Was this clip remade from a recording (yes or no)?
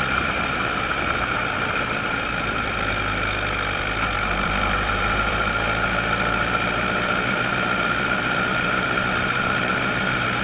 yes